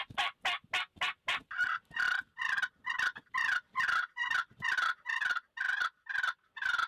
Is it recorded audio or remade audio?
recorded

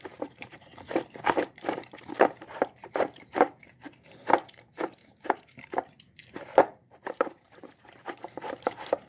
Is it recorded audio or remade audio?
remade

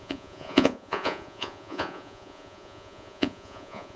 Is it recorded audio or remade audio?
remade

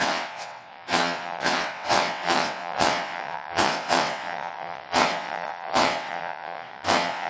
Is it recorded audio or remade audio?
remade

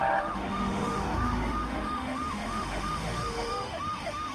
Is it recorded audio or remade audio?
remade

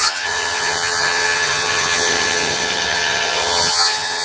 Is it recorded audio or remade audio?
remade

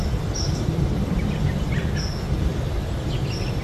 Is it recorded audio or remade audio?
remade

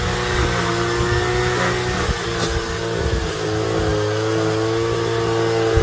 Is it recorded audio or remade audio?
recorded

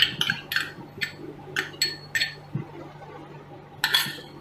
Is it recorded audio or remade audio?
recorded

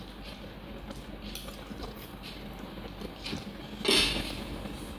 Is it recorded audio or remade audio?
recorded